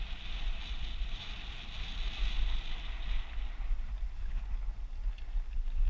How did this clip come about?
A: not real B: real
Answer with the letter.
B